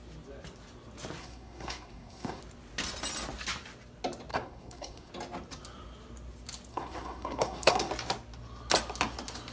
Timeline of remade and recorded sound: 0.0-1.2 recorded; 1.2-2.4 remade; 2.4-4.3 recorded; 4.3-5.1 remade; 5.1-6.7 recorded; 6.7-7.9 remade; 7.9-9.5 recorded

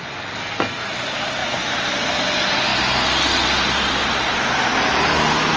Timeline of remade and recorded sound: 0.0-0.4 recorded; 0.4-0.9 remade; 0.9-5.6 recorded

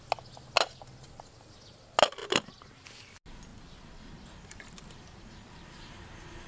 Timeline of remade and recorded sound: 0.0-6.5 recorded

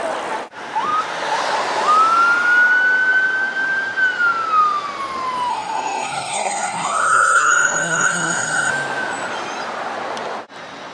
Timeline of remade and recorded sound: 0.0-5.5 recorded; 5.5-8.7 remade; 8.7-10.9 recorded

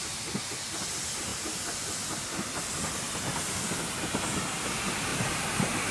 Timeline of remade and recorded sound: 0.0-5.9 recorded

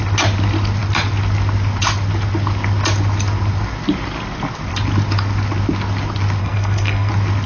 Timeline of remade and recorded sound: 0.0-6.4 recorded; 6.4-7.1 remade; 7.1-7.5 recorded

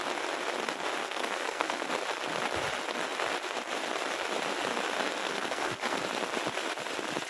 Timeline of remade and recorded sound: 0.0-1.0 recorded; 1.0-1.9 remade; 1.9-5.2 recorded; 5.2-6.0 remade; 6.0-7.3 recorded